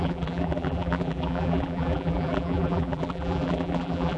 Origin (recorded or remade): remade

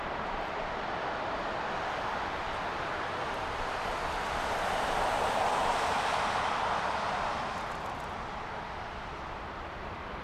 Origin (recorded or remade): remade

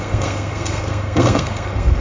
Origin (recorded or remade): remade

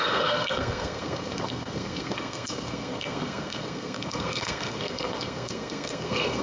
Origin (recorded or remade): remade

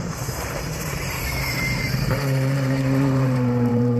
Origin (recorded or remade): remade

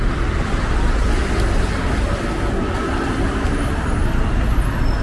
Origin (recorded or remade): recorded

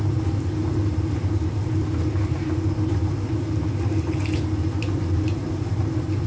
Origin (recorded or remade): recorded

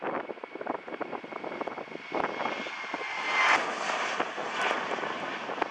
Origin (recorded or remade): recorded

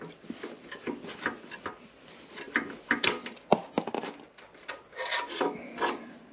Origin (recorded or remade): recorded